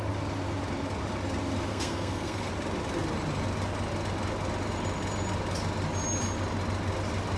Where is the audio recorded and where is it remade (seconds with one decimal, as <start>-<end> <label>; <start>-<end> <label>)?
0.0-1.7 recorded; 1.7-2.5 remade; 2.5-7.4 recorded